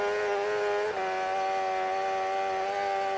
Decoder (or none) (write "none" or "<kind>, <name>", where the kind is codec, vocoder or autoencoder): none